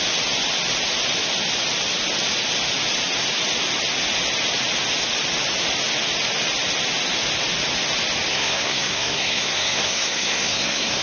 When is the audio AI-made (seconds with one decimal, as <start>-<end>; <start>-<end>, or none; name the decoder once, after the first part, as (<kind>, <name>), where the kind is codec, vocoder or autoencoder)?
8.3-11.0 (codec, SNAC)